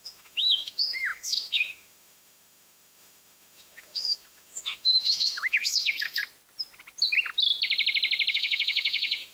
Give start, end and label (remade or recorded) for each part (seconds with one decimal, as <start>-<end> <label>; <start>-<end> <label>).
0.0-6.2 remade; 6.2-8.3 recorded; 8.3-9.3 remade